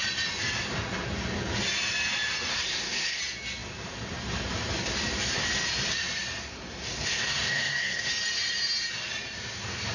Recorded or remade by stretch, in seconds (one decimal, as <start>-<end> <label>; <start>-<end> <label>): 0.0-2.5 recorded; 2.5-3.2 remade; 3.2-6.5 recorded; 6.5-8.1 remade; 8.1-9.9 recorded